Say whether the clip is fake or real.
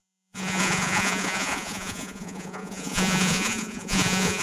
fake